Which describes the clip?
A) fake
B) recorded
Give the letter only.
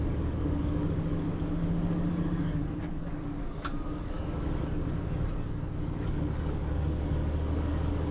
A